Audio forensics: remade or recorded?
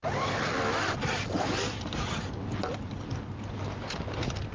recorded